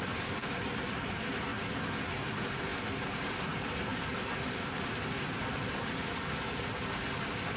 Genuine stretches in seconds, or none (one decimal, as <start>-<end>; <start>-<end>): 0.4-1.0; 1.5-2.1